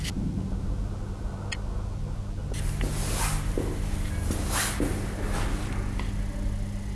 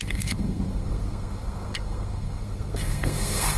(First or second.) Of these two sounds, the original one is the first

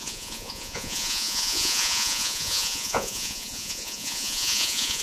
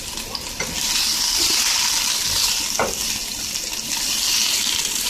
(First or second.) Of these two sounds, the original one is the second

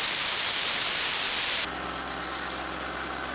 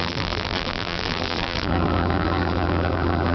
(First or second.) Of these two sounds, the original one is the first